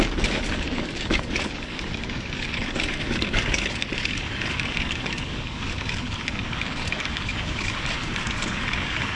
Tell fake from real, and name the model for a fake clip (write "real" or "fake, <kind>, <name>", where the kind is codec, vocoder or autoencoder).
fake, codec, DAC